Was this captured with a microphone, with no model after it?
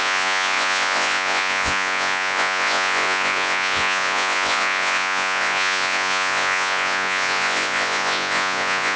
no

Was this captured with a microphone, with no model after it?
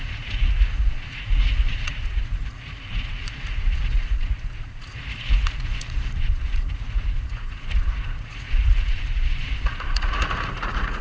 no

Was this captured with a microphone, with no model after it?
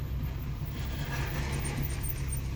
yes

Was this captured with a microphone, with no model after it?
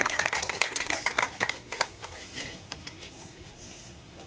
no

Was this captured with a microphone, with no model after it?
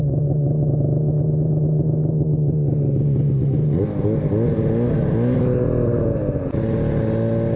yes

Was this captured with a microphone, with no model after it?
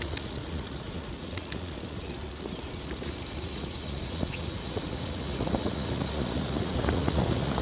no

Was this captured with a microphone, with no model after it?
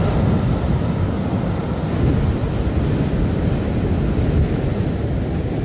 yes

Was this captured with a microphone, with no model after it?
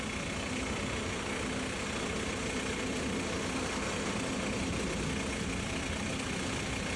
yes